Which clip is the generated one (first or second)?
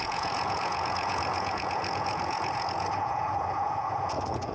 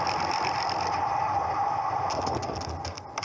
first